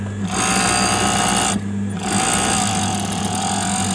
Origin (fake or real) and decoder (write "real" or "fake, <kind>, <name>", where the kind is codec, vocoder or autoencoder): real